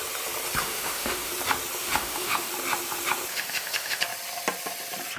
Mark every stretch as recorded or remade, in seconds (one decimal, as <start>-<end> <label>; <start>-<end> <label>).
0.0-0.6 recorded; 0.6-1.3 remade; 1.3-1.8 recorded; 1.8-2.5 remade; 2.5-3.3 recorded; 3.3-4.0 remade; 4.0-5.2 recorded